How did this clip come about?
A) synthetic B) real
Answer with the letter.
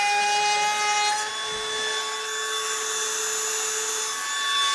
B